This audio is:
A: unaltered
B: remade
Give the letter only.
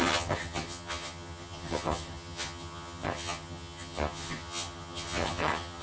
B